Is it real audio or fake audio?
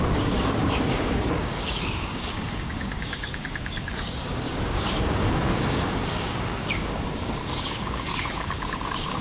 fake